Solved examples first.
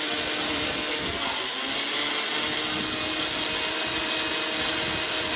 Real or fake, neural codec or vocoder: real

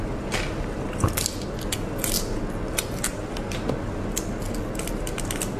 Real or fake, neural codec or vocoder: real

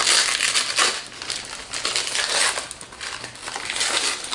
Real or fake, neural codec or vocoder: real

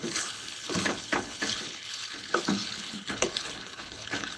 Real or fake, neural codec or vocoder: fake, codec, HILCodec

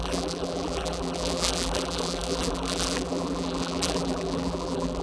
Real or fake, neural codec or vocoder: fake, vocoder, BigVGAN v2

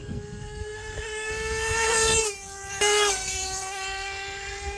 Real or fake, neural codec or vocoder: fake, codec, SNAC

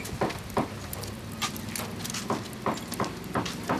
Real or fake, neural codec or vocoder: real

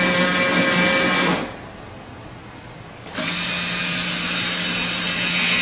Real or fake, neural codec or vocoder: real